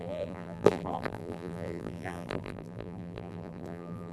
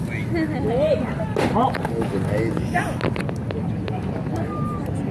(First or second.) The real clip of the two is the second